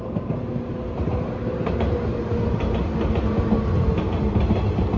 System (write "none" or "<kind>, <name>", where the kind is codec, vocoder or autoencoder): none